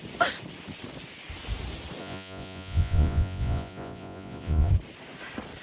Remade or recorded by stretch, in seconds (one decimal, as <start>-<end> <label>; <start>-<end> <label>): 0.0-2.0 recorded; 2.0-4.7 remade; 4.7-5.6 recorded